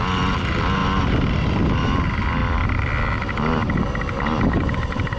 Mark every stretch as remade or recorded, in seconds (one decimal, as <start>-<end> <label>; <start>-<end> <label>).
0.0-2.4 recorded; 2.4-3.8 remade; 3.8-5.2 recorded